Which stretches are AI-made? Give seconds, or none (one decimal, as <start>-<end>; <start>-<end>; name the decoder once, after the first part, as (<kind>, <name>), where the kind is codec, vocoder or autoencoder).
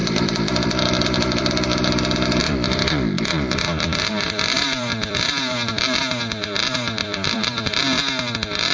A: 0.0-2.0 (vocoder, BigVGAN v2); 2.4-5.8; 7.0-7.6